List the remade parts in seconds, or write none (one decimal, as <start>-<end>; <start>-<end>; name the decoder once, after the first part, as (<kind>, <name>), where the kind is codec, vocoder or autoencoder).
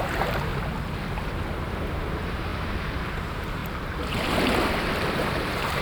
0.0-0.5 (vocoder, BigVGAN v2); 1.9-3.6; 5.0-5.8